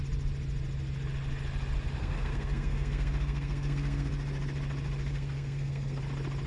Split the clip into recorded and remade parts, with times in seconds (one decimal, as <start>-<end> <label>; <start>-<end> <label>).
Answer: 0.0-2.0 recorded; 2.0-4.1 remade; 4.1-5.1 recorded; 5.1-6.0 remade; 6.0-6.5 recorded